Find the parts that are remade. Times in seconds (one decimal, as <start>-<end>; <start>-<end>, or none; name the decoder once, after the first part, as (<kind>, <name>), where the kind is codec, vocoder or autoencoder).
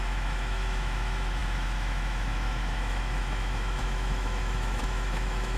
0.0-5.6 (autoencoder, DAC-VAE)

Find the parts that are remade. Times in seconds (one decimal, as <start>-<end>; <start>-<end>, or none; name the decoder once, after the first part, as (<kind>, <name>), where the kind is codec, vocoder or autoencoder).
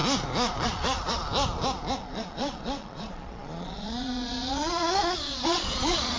0.5-1.2 (vocoder, Vocos); 2.0-6.2